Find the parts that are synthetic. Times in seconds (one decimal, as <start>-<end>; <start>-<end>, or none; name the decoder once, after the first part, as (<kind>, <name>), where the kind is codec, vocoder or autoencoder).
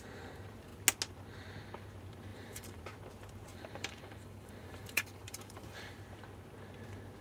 2.3-2.8 (vocoder, BigVGAN v2); 3.5-6.0